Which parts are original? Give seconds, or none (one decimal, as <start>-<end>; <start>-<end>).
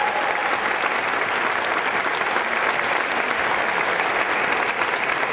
0.0-5.3